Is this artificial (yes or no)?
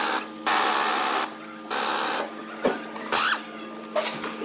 no